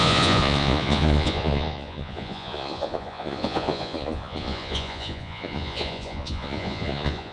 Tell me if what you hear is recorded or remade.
remade